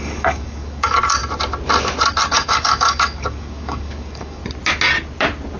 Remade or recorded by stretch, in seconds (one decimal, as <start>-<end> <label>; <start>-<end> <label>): 0.0-1.2 remade; 1.2-2.3 recorded; 2.3-4.4 remade; 4.4-5.6 recorded